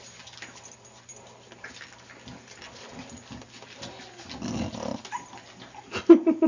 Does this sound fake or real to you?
real